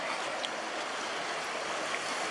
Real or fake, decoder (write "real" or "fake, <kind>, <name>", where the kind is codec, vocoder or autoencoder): real